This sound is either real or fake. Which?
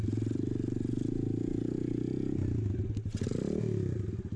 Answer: real